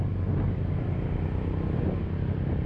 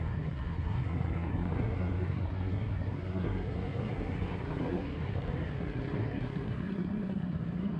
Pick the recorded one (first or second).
first